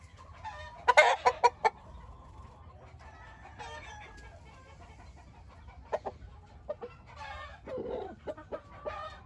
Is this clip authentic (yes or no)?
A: yes